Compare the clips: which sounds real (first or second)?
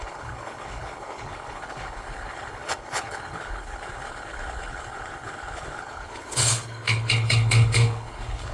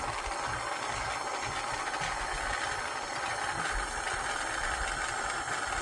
second